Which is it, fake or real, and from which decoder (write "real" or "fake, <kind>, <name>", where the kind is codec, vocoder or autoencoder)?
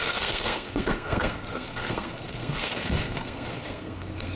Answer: fake, codec, SNAC